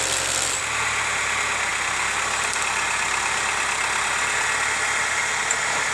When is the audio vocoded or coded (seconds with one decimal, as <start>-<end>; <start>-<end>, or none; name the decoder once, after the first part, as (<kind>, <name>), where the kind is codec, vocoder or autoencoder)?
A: none

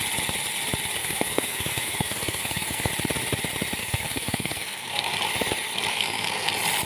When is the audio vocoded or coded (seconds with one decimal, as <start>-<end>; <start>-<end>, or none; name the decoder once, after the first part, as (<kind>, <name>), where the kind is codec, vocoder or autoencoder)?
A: 1.0-2.9 (codec, SNAC); 3.8-5.1; 5.9-6.5

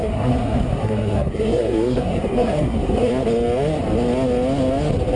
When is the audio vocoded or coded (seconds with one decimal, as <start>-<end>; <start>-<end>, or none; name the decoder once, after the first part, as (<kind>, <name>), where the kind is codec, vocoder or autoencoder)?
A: 0.0-3.1 (codec, SNAC)

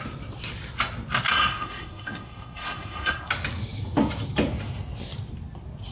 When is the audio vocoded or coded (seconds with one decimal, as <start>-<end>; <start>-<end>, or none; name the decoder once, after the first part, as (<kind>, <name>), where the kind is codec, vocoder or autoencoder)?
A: 1.3-3.3 (codec, SNAC)

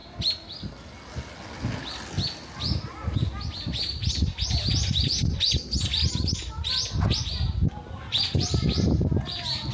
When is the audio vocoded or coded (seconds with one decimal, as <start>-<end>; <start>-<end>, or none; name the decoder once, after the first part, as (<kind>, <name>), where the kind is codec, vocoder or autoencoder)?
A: none

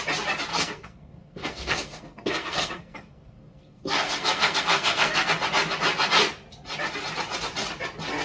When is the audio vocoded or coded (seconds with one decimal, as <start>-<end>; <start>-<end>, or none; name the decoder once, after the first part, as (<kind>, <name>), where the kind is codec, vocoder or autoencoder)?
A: 0.5-5.3 (codec, SNAC)

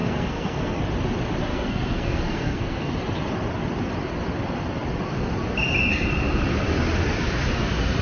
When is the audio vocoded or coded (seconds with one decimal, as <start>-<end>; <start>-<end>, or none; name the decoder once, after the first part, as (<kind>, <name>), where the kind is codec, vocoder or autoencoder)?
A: 0.0-0.8 (codec, SNAC); 1.5-2.9

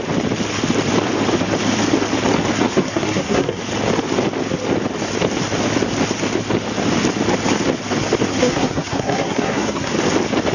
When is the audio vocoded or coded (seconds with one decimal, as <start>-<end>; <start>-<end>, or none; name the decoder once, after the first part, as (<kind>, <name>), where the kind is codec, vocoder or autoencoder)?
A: 2.7-3.6 (codec, SNAC); 8.3-9.9